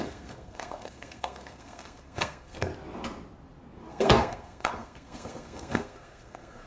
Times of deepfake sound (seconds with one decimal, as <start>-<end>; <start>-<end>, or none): 0.0-2.7; 3.9-6.7